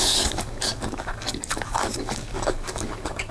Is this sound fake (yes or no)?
yes